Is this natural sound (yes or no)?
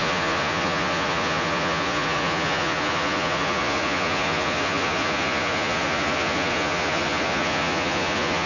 no